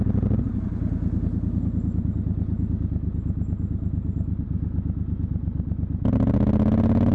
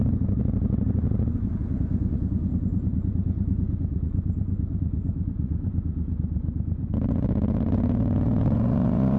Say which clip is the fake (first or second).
second